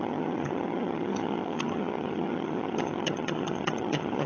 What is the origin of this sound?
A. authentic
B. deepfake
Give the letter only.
B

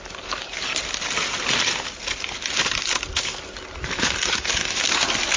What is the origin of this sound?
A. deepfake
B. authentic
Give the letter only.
B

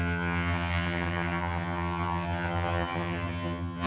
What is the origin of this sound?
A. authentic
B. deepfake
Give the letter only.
B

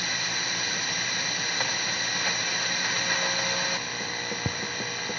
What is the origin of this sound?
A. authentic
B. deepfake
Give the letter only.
A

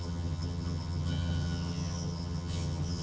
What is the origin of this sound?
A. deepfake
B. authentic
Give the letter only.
A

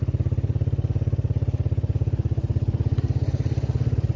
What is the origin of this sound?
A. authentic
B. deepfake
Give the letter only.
A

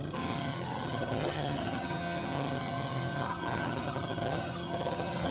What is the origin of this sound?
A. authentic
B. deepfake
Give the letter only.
B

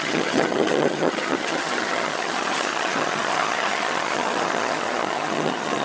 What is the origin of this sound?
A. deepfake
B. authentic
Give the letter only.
A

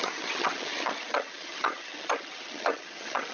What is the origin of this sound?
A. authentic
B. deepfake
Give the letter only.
B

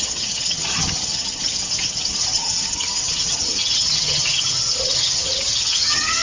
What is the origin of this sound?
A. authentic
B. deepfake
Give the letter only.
B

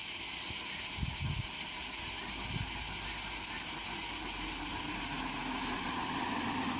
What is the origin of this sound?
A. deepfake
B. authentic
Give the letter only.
B